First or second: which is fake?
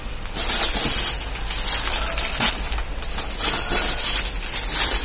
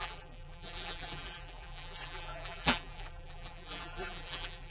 second